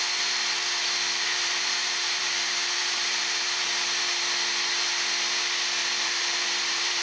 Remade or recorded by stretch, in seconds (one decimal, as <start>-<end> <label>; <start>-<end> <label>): 0.0-1.3 recorded; 1.3-3.7 remade; 3.7-5.8 recorded; 5.8-7.0 remade